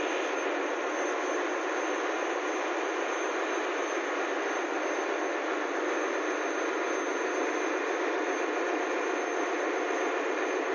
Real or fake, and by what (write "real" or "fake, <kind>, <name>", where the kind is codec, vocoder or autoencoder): real